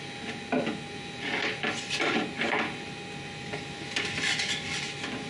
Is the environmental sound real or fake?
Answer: real